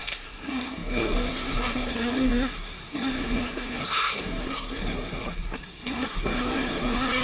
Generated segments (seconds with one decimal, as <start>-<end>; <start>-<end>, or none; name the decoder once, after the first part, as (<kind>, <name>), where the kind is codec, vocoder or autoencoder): 0.0-7.2 (codec, SNAC)